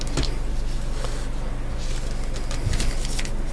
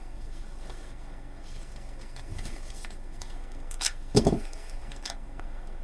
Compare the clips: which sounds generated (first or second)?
second